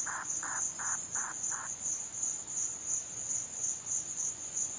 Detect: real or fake fake